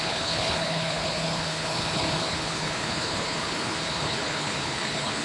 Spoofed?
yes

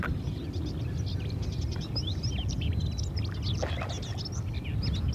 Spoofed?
no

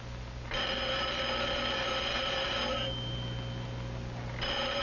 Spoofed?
no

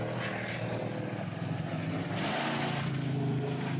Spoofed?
no